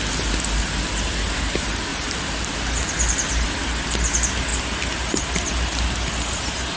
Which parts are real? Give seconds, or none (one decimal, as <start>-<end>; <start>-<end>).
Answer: 0.0-1.9; 2.5-6.8